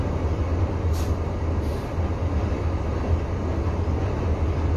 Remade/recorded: recorded